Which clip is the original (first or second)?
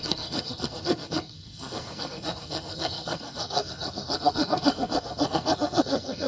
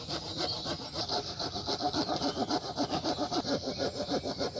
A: second